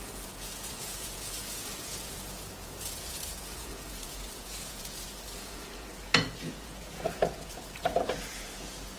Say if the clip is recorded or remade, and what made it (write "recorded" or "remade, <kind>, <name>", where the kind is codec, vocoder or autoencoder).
remade, vocoder, Vocos